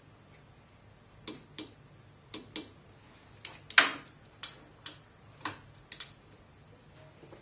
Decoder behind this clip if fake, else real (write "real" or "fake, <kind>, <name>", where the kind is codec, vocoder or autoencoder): real